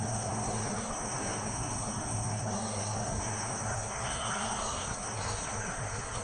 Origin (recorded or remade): remade